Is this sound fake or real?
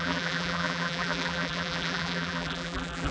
fake